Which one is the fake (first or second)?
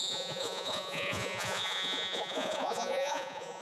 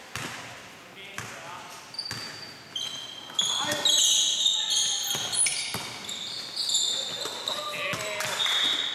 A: first